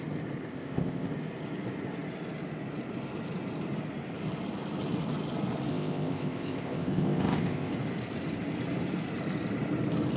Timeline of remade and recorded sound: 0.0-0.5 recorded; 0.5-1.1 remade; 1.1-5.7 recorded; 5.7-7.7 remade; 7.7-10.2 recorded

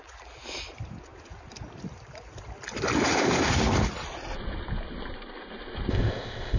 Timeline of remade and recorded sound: 0.0-5.9 recorded; 5.9-6.6 remade

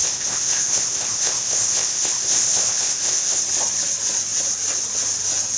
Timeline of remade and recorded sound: 0.0-3.4 remade; 3.4-5.6 recorded

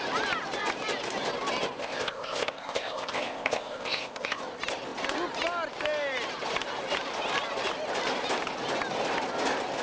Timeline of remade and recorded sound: 0.0-1.8 recorded; 1.8-4.4 remade; 4.4-9.8 recorded

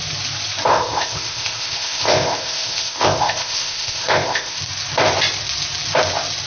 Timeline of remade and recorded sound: 0.0-0.7 recorded; 0.7-4.6 remade; 4.6-6.5 recorded

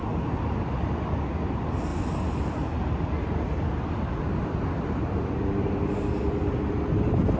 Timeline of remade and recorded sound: 0.0-7.4 recorded

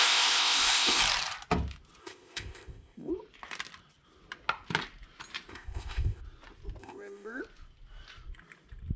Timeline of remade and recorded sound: 0.0-1.0 remade; 1.0-2.0 recorded; 2.0-3.1 remade; 3.1-5.5 recorded; 5.5-6.2 remade; 6.2-6.8 recorded; 6.8-7.4 remade; 7.4-9.0 recorded

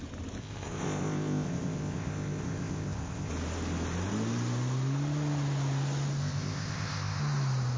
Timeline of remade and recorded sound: 0.0-0.4 recorded; 0.4-3.3 remade; 3.3-6.2 recorded; 6.2-7.2 remade; 7.2-7.8 recorded